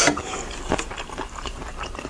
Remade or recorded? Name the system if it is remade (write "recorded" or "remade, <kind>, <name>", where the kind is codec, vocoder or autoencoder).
recorded